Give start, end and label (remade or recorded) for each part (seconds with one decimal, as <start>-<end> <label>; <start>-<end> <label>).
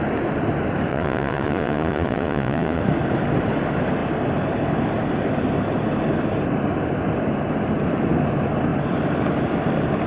0.0-0.9 recorded; 0.9-2.8 remade; 2.8-10.1 recorded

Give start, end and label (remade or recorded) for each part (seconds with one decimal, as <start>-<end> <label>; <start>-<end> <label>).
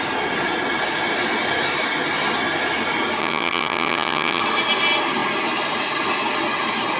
0.0-3.2 recorded; 3.2-4.4 remade; 4.4-7.0 recorded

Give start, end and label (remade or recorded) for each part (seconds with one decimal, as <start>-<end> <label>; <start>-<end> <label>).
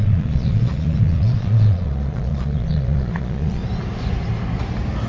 0.0-3.6 remade; 3.6-5.1 recorded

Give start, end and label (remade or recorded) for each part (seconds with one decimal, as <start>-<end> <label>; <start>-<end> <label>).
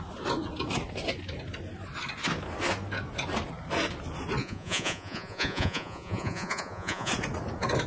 0.0-4.4 recorded; 4.4-7.1 remade; 7.1-7.9 recorded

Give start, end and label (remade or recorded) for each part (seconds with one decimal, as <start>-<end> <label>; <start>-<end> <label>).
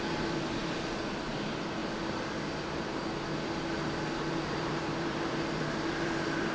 0.0-1.8 remade; 1.8-4.5 recorded; 4.5-6.5 remade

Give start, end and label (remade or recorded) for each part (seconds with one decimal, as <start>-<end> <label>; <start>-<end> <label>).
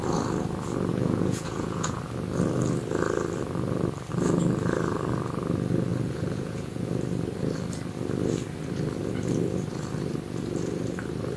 0.0-0.9 recorded; 0.9-2.0 remade; 2.0-5.9 recorded; 5.9-6.8 remade; 6.8-11.4 recorded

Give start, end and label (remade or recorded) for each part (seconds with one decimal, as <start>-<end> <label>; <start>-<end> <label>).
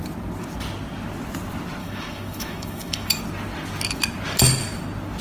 0.0-1.8 recorded; 1.8-3.2 remade; 3.2-5.2 recorded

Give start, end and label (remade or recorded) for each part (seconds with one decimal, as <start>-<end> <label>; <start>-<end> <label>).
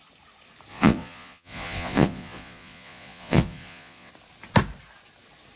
0.0-0.7 recorded; 0.7-4.1 remade; 4.1-5.6 recorded